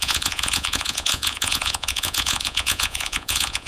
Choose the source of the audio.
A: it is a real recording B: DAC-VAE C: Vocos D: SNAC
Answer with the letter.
C